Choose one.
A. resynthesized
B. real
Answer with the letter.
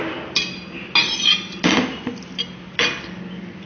B